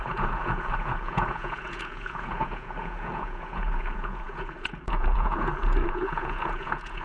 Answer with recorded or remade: remade